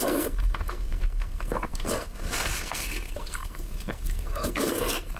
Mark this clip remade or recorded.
remade